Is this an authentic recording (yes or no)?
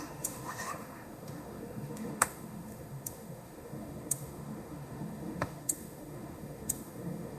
no